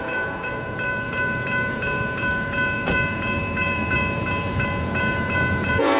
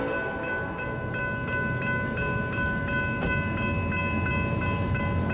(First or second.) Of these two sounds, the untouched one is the second